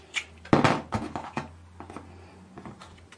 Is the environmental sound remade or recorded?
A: recorded